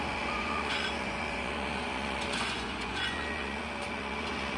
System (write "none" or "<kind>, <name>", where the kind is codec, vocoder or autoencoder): vocoder, Vocos